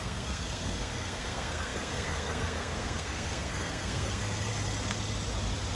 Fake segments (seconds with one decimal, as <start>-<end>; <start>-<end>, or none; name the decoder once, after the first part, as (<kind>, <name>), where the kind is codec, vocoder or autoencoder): 0.0-4.5 (codec, SNAC)